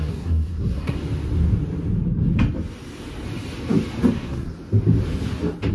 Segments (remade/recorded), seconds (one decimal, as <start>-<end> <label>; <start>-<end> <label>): 0.0-1.0 remade; 1.0-4.1 recorded; 4.1-4.5 remade; 4.5-5.7 recorded